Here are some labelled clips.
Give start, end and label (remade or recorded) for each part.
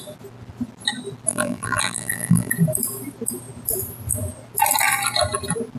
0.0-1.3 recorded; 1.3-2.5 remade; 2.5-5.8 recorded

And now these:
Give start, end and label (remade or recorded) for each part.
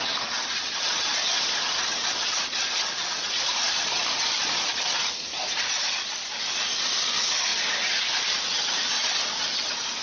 0.0-1.1 recorded; 1.1-5.6 remade; 5.6-7.5 recorded; 7.5-8.4 remade; 8.4-10.0 recorded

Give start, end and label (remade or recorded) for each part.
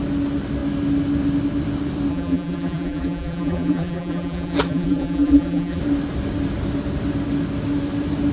0.0-2.1 recorded; 2.1-5.8 remade; 5.8-8.3 recorded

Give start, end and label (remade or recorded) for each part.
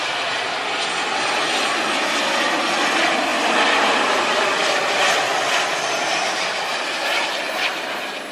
0.0-3.3 recorded; 3.3-4.4 remade; 4.4-5.3 recorded; 5.3-8.3 remade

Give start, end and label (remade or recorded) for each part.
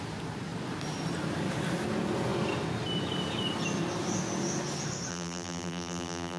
0.0-5.1 recorded; 5.1-6.4 remade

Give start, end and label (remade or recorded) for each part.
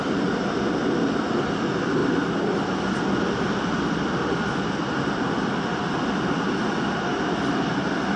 0.0-8.2 recorded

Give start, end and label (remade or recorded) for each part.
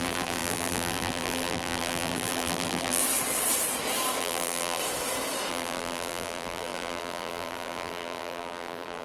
0.0-3.0 remade; 3.0-4.2 recorded; 4.2-4.8 remade; 4.8-5.5 recorded; 5.5-9.0 remade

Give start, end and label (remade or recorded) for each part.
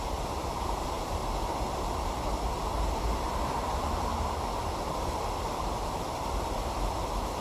0.0-1.2 remade; 1.2-2.0 recorded; 2.0-4.1 remade; 4.1-5.0 recorded; 5.0-7.4 remade